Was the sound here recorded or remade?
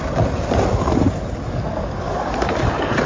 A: recorded